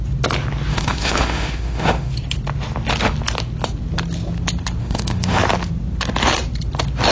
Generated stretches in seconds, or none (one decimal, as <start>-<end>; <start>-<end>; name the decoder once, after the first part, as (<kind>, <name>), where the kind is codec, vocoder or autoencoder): 0.7-2.1 (autoencoder, DAC-VAE); 4.8-5.4